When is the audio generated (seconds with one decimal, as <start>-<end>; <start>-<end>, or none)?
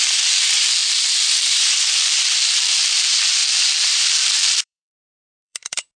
0.0-0.8; 1.4-6.0